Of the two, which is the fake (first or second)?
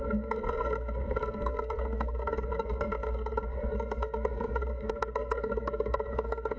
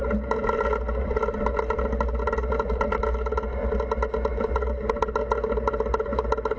first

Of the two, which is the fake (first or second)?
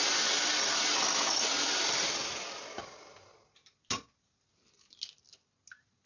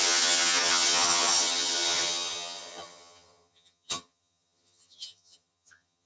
second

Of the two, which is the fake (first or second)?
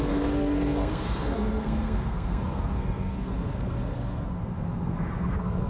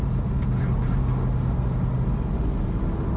first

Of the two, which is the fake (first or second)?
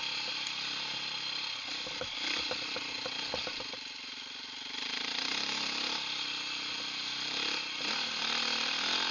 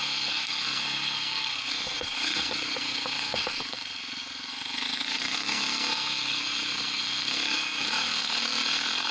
second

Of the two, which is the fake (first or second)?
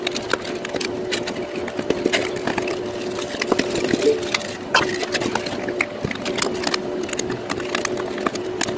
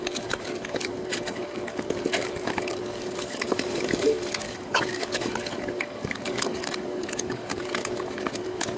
second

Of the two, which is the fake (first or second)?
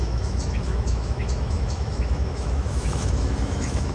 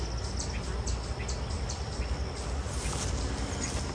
first